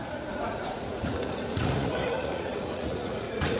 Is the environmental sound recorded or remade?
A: remade